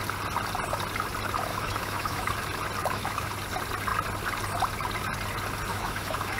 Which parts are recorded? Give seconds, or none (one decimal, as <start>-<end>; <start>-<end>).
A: 0.0-1.5; 2.3-2.8; 3.3-5.7